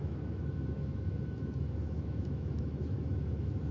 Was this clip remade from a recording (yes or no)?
yes